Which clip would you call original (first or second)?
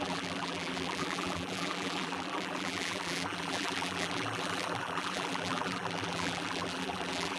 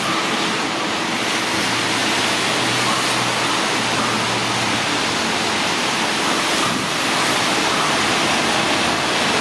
second